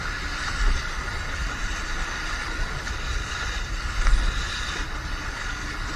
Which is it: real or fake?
real